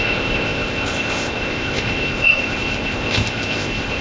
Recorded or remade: remade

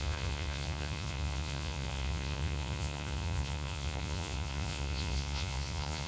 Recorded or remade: remade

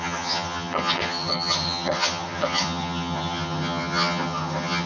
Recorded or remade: remade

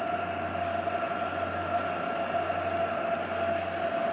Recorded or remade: recorded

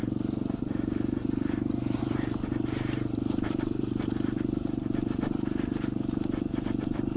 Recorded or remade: remade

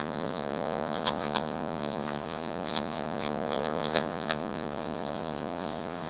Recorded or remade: remade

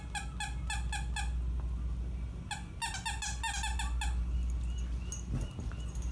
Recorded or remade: recorded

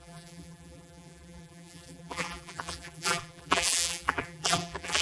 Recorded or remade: remade